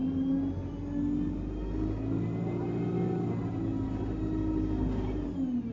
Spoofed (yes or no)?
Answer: no